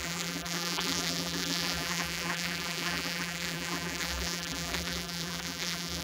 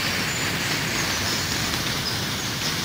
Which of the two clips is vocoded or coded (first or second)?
first